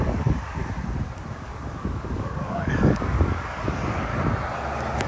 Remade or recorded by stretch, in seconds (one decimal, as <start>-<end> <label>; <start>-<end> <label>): 0.0-0.6 remade; 0.6-1.3 recorded; 1.3-4.1 remade; 4.1-5.1 recorded